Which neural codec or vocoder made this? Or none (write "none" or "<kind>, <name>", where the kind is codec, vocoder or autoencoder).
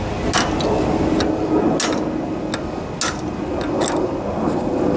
none